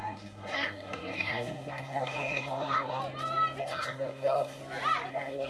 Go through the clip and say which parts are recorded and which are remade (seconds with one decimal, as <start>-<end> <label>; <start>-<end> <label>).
0.0-3.0 remade; 3.0-3.6 recorded; 3.6-4.6 remade; 4.6-5.1 recorded; 5.1-5.5 remade